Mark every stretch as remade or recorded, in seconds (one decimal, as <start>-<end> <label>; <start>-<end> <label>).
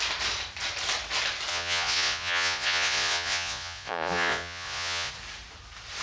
0.0-1.5 recorded; 1.5-5.1 remade; 5.1-6.0 recorded